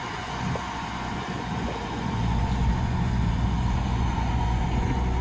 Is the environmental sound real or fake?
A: fake